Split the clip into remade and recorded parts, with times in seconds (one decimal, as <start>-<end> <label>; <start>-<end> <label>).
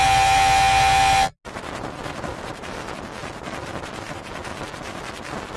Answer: 0.0-5.6 recorded